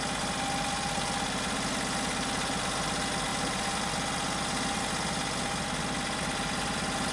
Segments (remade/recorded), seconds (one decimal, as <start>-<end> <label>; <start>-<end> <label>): 0.0-7.1 recorded